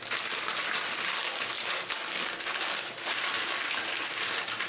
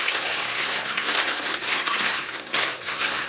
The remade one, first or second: second